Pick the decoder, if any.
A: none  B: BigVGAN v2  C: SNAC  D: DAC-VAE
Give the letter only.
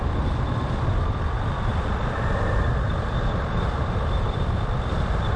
B